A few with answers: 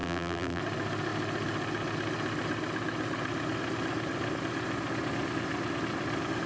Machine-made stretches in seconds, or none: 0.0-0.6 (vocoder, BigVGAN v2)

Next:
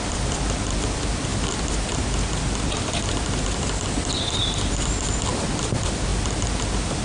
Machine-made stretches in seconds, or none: none

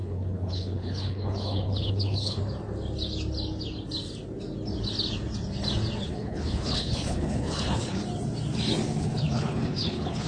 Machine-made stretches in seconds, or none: 0.0-2.4 (codec, HILCodec); 6.0-8.0; 9.0-10.3

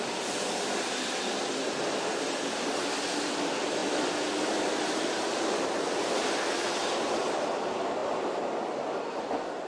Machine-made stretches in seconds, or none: none